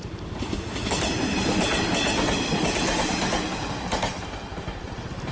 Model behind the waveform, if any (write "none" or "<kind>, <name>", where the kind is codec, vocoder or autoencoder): none